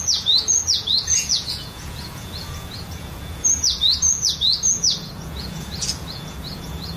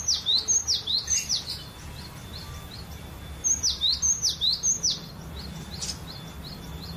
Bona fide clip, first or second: second